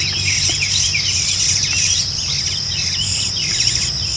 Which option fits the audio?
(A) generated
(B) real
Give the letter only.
B